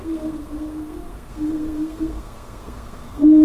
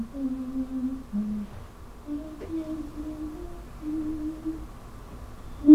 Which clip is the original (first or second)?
second